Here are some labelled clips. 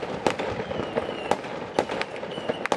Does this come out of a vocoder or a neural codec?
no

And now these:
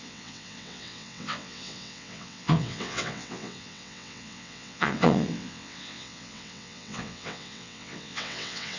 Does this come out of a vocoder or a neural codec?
yes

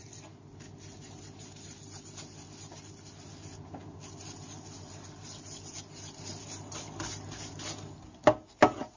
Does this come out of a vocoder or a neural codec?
no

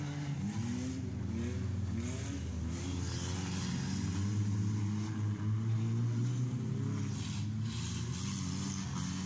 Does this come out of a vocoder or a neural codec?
no